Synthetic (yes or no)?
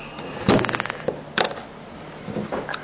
no